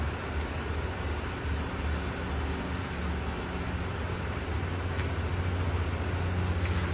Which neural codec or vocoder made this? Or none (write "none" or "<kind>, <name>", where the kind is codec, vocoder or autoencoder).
none